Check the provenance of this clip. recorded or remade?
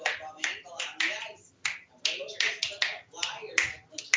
recorded